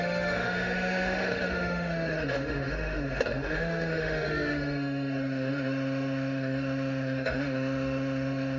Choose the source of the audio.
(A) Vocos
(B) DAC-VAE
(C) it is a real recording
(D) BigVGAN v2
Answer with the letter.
B